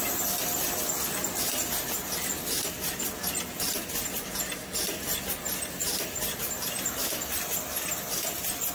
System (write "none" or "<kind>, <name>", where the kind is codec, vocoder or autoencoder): none